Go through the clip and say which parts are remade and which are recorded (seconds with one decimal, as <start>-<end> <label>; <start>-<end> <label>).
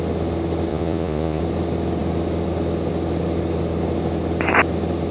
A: 0.0-0.7 recorded; 0.7-1.4 remade; 1.4-5.1 recorded